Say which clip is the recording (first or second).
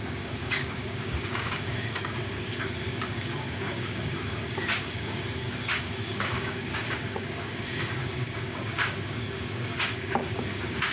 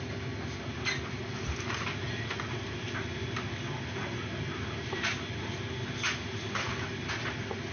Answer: second